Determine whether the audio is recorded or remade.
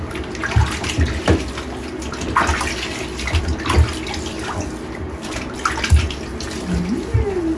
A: recorded